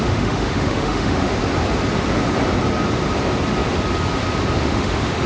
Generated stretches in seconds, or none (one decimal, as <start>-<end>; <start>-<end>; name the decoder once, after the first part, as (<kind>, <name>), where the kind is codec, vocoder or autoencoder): 0.0-1.4 (autoencoder, DAC-VAE); 4.6-5.3